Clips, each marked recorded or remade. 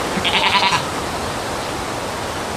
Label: recorded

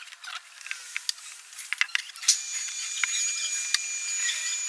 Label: recorded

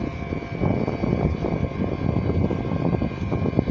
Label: recorded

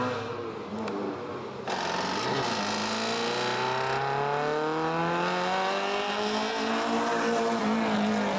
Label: recorded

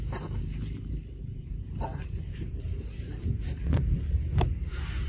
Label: remade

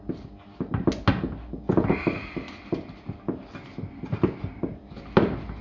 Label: recorded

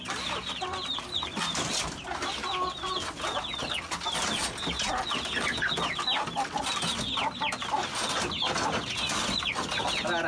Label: recorded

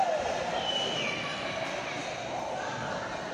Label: recorded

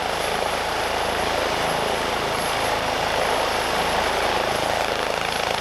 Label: recorded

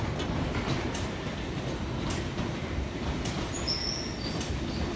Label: recorded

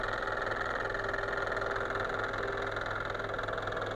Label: recorded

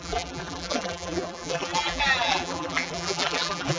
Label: remade